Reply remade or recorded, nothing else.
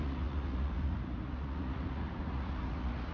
remade